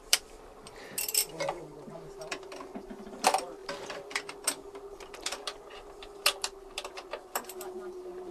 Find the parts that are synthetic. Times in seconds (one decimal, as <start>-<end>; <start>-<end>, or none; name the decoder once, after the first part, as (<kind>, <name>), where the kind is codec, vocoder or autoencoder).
0.0-8.3 (vocoder, BigVGAN v2)